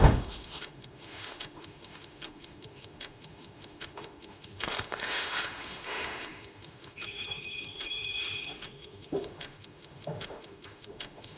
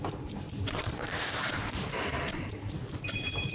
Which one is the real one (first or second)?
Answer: second